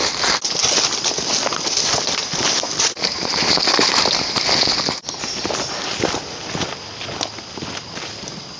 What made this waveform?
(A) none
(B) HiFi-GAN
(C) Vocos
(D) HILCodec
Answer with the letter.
A